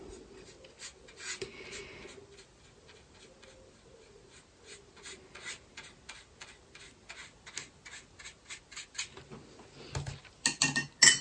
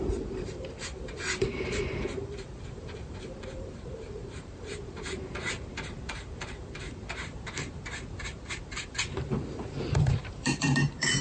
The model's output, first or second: second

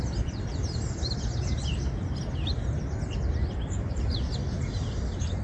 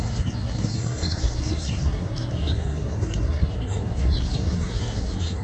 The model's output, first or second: second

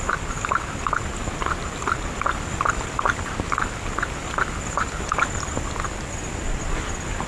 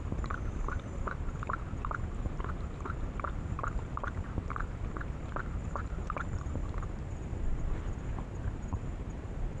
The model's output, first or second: second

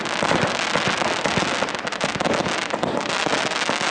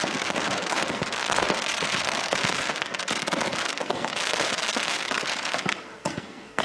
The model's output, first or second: second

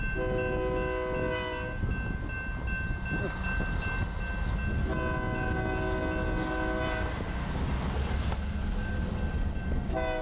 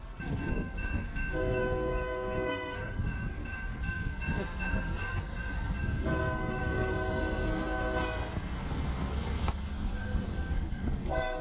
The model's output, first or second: second